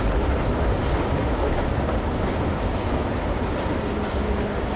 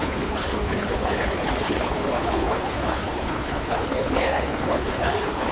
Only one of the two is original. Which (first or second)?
first